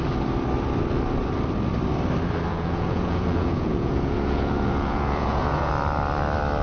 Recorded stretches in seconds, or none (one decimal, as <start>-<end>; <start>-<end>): 0.0-2.5; 5.7-6.6